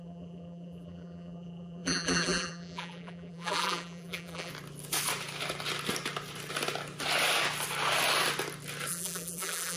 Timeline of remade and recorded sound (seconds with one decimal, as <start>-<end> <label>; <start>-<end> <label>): 0.0-4.5 remade; 4.5-8.9 recorded; 8.9-9.8 remade